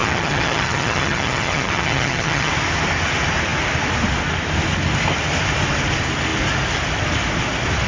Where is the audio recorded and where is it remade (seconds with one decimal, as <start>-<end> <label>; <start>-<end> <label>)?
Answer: 0.0-2.5 remade; 2.5-7.9 recorded

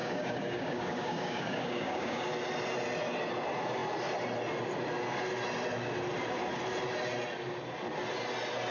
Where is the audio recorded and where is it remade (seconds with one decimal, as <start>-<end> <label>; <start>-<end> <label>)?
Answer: 0.0-2.3 remade; 2.3-8.7 recorded